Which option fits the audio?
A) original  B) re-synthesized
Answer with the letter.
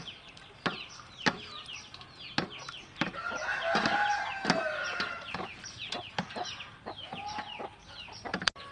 A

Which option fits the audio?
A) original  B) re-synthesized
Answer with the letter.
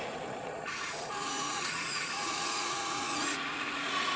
B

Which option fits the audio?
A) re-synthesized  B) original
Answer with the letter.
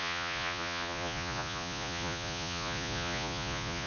A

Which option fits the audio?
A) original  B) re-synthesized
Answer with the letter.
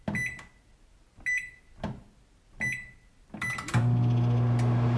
A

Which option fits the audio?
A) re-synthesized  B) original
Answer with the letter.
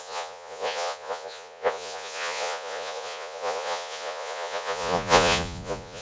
A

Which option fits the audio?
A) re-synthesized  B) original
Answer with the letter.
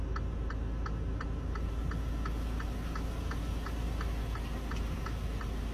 B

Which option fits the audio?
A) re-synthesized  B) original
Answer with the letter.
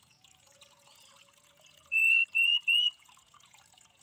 A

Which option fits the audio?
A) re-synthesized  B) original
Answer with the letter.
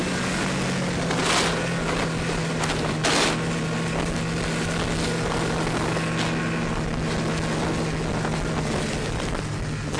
B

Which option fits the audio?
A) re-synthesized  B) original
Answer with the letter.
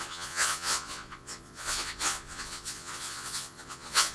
A